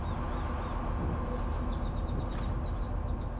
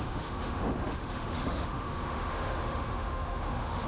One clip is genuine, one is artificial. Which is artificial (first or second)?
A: second